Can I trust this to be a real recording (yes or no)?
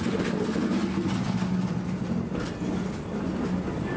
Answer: yes